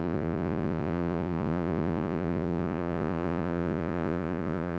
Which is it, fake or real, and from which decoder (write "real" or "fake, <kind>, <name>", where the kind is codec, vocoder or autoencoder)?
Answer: fake, vocoder, Vocos